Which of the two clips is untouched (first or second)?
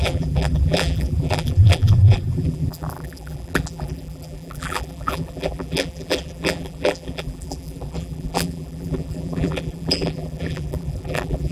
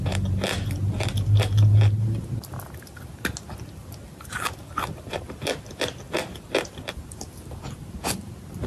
second